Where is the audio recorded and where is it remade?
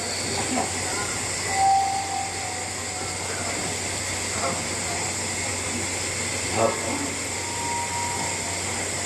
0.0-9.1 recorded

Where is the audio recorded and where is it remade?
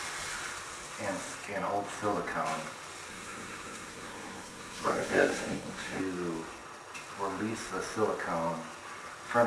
0.0-3.1 recorded; 3.1-6.0 remade; 6.0-9.5 recorded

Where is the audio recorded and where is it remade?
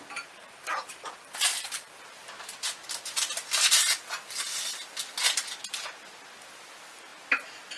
0.0-7.8 recorded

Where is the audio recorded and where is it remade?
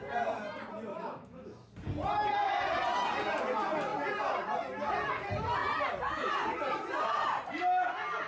0.0-0.9 recorded; 0.9-1.7 remade; 1.7-8.3 recorded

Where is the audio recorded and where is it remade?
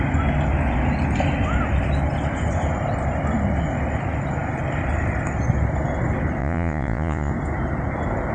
0.0-6.4 recorded; 6.4-7.3 remade; 7.3-8.3 recorded